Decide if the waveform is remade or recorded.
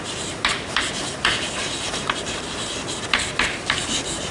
remade